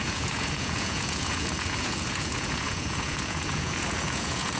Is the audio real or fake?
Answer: fake